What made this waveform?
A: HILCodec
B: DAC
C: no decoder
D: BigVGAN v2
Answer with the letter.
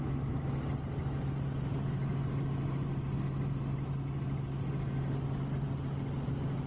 C